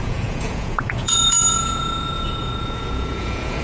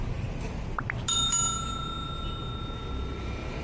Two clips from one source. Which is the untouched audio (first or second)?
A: second